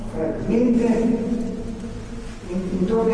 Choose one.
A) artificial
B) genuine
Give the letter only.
B